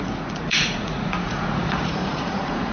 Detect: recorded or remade remade